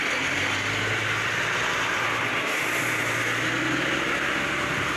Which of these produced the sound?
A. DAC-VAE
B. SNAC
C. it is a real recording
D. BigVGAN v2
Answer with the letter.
C